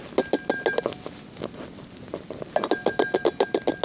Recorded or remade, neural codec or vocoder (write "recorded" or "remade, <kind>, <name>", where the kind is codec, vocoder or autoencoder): recorded